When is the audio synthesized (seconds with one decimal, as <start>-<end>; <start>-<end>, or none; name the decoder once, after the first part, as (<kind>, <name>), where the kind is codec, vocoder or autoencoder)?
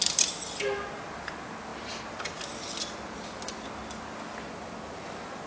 none